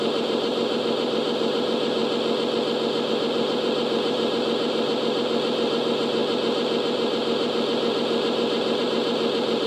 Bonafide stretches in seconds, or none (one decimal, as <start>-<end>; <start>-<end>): 2.0-3.1